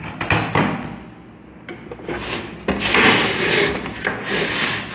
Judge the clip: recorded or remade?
recorded